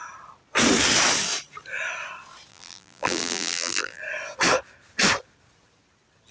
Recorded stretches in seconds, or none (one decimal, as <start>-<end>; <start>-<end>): 0.0-2.5; 4.0-6.3